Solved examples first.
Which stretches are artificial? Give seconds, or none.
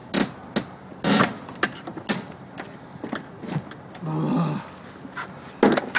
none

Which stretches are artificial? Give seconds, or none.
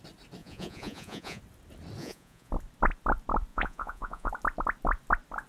0.4-1.4 (vocoder, Vocos); 2.0-2.5; 3.5-4.3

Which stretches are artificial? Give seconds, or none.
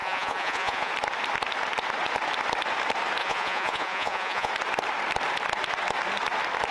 0.0-0.9 (vocoder, Vocos); 3.2-4.5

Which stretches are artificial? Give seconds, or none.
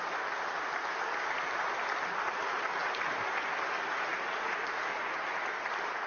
none